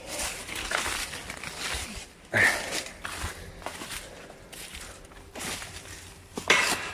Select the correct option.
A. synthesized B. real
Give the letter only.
B